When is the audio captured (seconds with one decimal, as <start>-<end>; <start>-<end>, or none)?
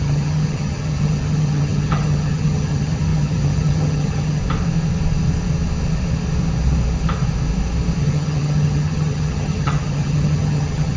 4.4-8.0